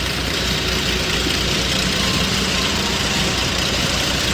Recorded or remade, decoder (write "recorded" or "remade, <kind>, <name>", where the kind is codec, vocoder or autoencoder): recorded